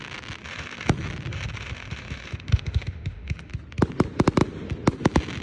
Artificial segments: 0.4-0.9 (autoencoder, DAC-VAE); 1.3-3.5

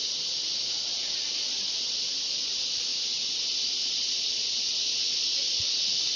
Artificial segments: none

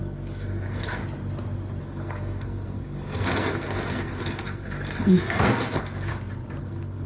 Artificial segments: 0.0-1.0 (codec, SNAC); 1.8-6.1; 6.6-7.1

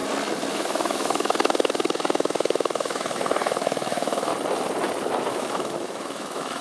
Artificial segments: 0.5-4.3 (autoencoder, DAC-VAE); 5.3-6.6

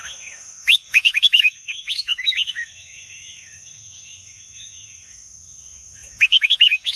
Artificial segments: 0.0-7.0 (autoencoder, DAC-VAE)

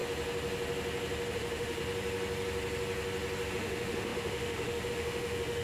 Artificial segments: 1.3-1.8 (autoencoder, DAC-VAE); 3.5-5.6

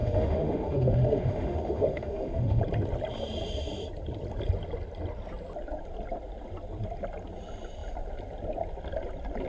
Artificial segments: 0.0-2.6 (autoencoder, DAC-VAE)